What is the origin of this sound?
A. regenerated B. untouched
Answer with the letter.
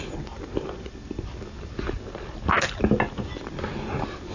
B